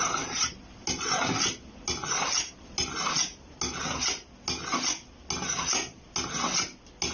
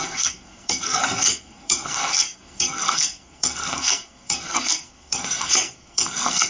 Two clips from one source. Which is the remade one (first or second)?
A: second